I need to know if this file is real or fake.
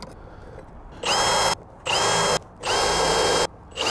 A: real